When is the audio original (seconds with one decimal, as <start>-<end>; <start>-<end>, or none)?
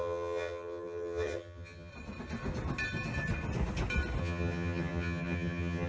1.9-4.2